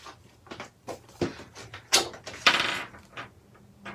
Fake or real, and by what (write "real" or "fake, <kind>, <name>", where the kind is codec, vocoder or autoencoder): real